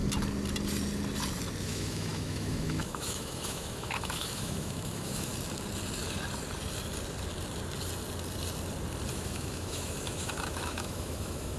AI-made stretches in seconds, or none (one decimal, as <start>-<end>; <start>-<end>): 1.6-5.3; 9.1-11.6